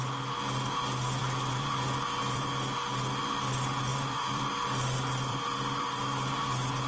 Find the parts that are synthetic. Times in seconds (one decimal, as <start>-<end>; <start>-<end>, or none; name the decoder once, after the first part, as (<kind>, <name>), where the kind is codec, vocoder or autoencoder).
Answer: 1.2-2.5 (vocoder, BigVGAN v2); 3.9-4.5; 5.3-6.3